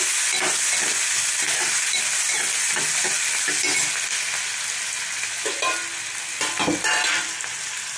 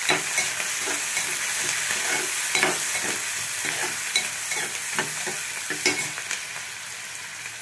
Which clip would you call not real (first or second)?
second